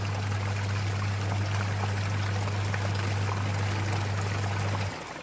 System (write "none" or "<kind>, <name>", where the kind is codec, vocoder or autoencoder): none